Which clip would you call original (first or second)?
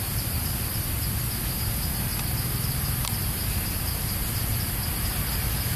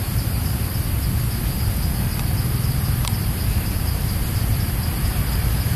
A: first